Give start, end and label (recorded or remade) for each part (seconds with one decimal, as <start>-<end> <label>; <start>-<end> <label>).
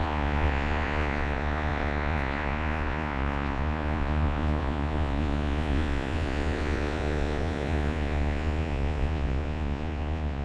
0.0-10.4 remade